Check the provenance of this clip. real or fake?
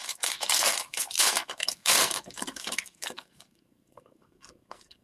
fake